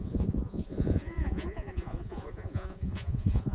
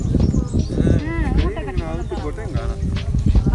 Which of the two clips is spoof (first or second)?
first